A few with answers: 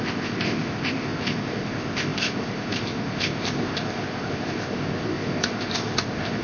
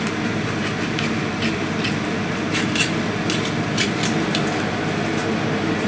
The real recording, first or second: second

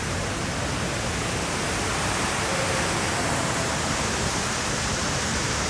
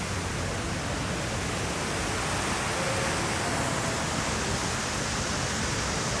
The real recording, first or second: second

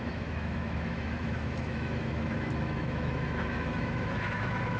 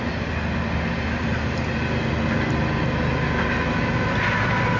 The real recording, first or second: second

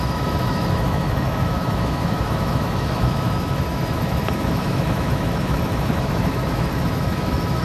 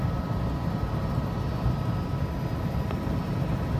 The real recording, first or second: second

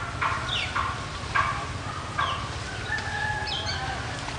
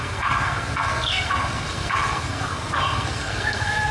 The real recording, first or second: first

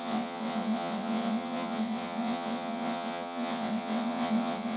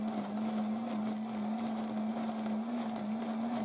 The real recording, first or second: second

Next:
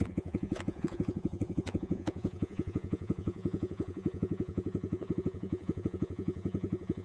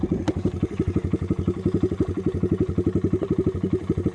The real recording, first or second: second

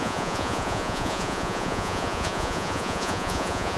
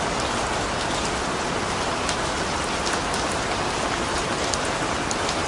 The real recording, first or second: second